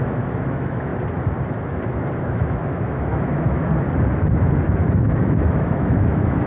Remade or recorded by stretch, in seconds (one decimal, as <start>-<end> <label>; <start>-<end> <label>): 0.0-0.9 remade; 0.9-2.2 recorded; 2.2-3.7 remade; 3.7-4.7 recorded; 4.7-6.5 remade